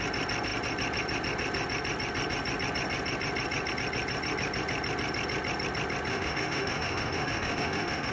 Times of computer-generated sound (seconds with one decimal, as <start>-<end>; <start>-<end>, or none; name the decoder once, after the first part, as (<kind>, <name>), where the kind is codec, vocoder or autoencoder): 6.1-8.1 (autoencoder, DAC-VAE)